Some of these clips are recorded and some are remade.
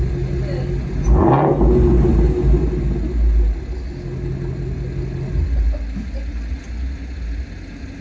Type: recorded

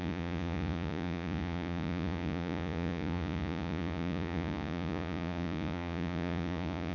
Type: remade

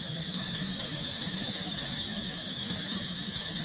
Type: remade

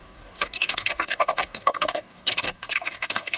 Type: remade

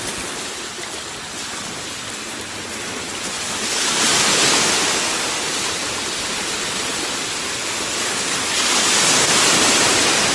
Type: recorded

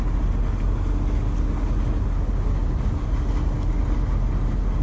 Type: recorded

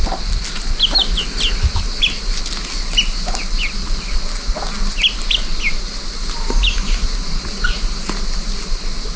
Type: recorded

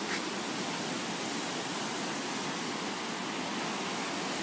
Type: recorded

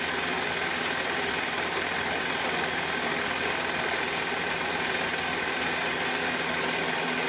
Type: recorded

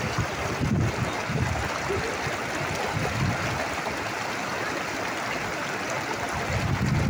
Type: recorded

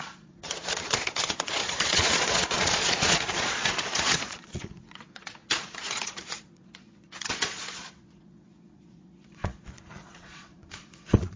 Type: remade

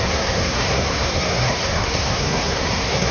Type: remade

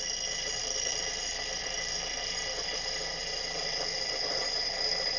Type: remade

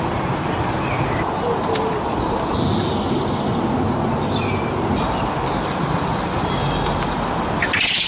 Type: recorded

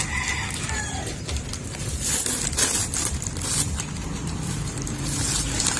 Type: recorded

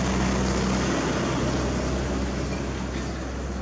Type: recorded